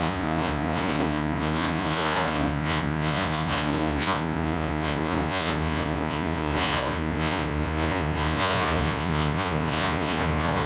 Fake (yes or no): yes